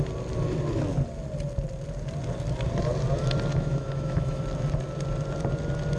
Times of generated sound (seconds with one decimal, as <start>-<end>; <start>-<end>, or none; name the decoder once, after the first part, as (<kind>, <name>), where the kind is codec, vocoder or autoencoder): 3.5-4.4 (autoencoder, DAC-VAE)